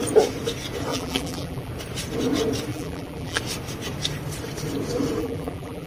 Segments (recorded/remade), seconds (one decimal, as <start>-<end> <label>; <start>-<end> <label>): 0.0-0.9 recorded; 0.9-1.7 remade; 1.7-2.7 recorded; 2.7-3.4 remade; 3.4-5.2 recorded; 5.2-5.9 remade